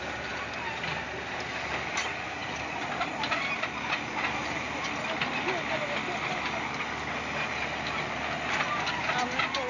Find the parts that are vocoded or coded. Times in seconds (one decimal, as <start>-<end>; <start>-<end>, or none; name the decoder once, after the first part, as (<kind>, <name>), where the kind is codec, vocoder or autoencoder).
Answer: none